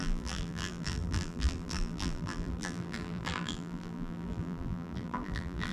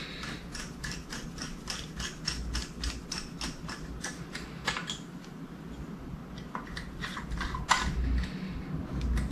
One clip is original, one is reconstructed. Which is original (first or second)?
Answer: second